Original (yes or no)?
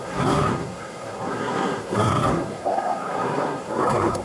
no